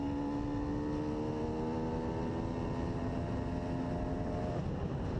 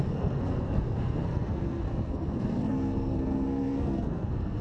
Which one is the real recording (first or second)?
first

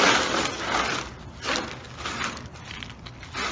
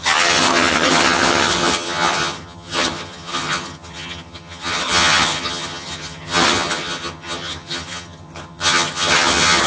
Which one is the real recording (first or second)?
first